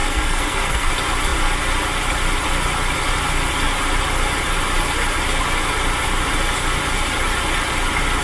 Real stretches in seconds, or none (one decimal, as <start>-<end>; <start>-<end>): 0.9-8.2